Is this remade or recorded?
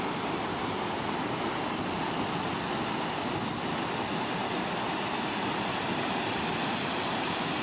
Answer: recorded